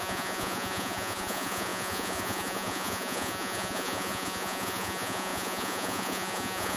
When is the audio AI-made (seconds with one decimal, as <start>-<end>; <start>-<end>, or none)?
0.0-6.8